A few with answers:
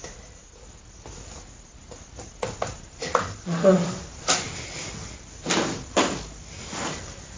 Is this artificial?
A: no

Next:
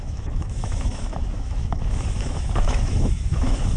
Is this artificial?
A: yes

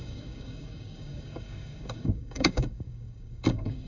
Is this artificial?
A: yes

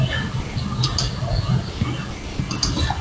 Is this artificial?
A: no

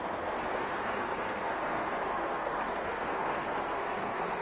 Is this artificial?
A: yes